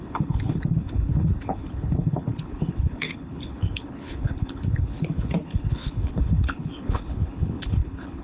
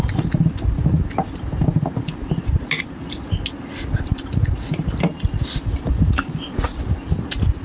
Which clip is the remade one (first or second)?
first